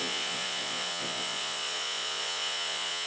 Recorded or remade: remade